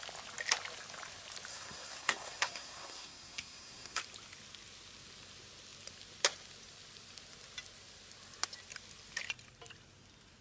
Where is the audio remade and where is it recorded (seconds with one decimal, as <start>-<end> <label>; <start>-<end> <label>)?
0.0-1.5 recorded; 1.5-4.0 remade; 4.0-10.4 recorded